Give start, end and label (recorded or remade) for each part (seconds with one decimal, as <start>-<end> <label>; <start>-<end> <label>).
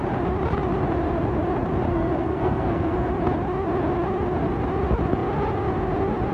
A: 0.0-1.9 recorded; 1.9-3.1 remade; 3.1-6.3 recorded